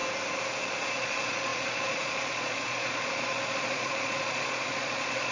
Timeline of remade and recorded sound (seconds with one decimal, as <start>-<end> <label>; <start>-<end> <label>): 0.0-0.6 recorded; 0.6-5.3 remade